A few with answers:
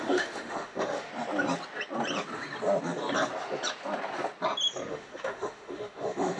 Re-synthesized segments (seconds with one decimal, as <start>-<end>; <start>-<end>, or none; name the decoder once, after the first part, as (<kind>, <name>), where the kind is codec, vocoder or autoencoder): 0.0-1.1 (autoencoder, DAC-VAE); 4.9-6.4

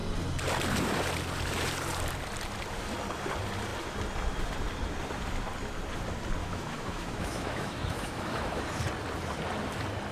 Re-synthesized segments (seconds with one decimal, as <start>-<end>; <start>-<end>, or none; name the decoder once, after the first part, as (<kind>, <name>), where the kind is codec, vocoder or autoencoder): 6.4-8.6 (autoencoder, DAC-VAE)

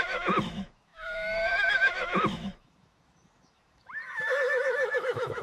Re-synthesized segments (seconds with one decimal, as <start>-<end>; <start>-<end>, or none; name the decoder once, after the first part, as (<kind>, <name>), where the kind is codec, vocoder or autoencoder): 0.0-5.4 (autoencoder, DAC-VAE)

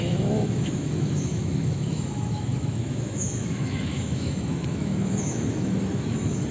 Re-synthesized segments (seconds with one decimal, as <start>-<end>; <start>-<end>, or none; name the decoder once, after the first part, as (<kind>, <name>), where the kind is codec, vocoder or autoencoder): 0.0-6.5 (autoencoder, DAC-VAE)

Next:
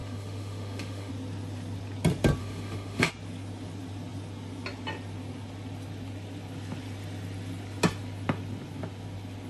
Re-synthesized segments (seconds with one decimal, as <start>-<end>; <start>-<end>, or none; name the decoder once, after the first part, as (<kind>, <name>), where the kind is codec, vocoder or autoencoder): 0.0-1.1 (autoencoder, DAC-VAE); 2.4-3.1

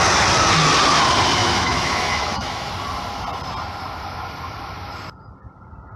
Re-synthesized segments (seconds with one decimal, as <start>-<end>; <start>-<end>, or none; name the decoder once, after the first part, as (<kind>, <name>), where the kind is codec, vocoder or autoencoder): 1.4-2.7 (autoencoder, DAC-VAE)

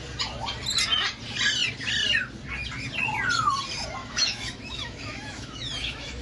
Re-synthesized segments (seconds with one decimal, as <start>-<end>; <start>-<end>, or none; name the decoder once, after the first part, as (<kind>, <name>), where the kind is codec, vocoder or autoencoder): 4.0-6.2 (autoencoder, DAC-VAE)